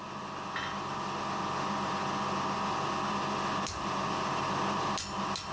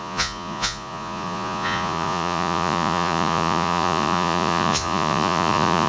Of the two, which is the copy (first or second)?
second